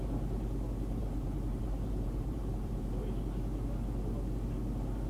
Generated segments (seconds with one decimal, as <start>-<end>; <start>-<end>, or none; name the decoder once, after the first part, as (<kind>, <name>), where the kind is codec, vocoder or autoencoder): 1.0-2.9 (vocoder, BigVGAN v2)